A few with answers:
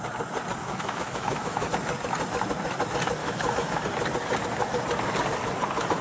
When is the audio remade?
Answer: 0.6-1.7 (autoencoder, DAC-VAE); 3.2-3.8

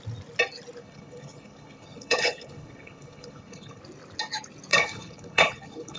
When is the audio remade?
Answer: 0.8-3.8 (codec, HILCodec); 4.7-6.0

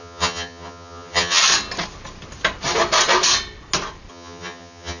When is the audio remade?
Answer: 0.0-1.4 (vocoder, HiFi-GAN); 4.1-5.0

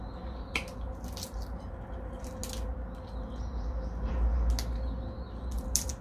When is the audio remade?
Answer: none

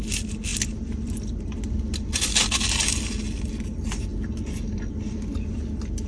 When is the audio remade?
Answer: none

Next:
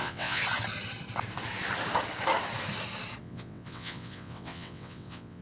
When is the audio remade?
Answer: 0.0-0.4 (vocoder, WaveNeXt); 3.2-5.4

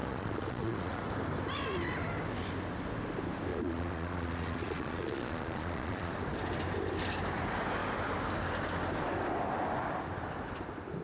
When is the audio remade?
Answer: 0.0-1.0 (vocoder, Vocos); 3.5-6.1